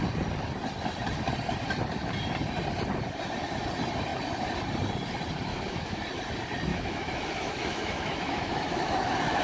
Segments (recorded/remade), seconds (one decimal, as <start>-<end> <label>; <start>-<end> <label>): 0.0-5.5 recorded; 5.5-6.0 remade; 6.0-6.7 recorded; 6.7-9.4 remade